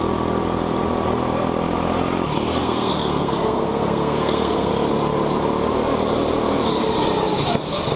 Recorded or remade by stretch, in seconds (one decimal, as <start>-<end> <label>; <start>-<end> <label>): 0.0-2.6 recorded; 2.6-4.7 remade; 4.7-8.0 recorded